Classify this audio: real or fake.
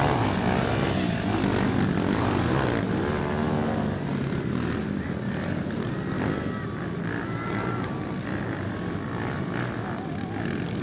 real